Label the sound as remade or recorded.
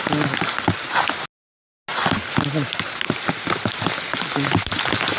recorded